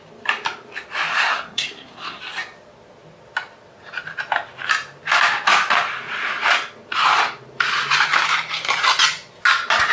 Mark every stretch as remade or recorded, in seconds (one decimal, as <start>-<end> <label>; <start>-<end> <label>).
0.0-1.1 recorded; 1.1-2.2 remade; 2.2-9.9 recorded